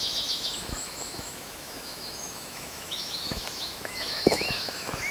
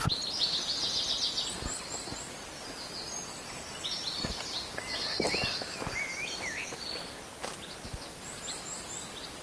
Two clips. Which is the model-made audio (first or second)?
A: first